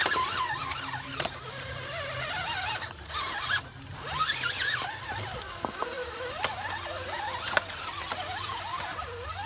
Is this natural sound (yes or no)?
yes